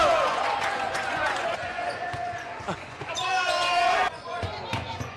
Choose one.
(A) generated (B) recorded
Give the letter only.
A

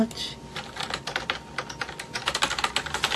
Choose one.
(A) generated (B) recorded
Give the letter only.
B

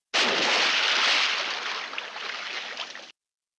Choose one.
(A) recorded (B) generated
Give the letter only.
A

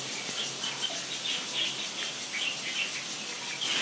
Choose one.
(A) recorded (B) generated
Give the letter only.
A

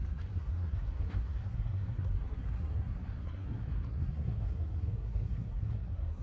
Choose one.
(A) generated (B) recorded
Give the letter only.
A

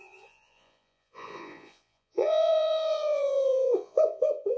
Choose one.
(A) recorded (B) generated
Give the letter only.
B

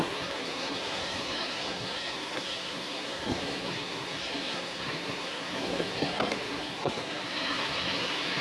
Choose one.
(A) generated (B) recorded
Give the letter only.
A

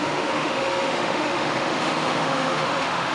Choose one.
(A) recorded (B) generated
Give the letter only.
B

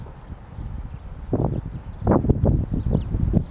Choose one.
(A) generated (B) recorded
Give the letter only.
B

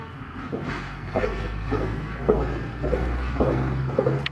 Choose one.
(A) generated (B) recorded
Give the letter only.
A